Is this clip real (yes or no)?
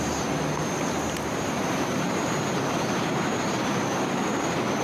no